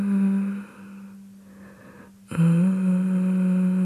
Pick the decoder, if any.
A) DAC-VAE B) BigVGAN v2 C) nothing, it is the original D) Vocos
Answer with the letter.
C